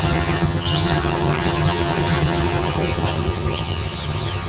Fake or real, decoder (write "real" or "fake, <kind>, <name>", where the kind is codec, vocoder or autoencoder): fake, vocoder, HiFi-GAN